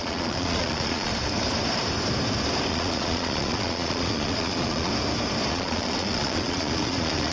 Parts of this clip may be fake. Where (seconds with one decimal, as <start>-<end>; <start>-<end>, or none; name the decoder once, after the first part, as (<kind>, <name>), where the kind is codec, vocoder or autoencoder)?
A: 0.0-1.1 (vocoder, Vocos); 2.7-4.9; 5.5-7.3